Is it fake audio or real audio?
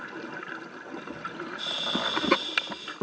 real